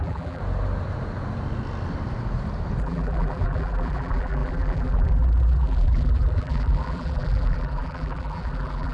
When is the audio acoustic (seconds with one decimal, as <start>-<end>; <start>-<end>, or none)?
0.4-2.8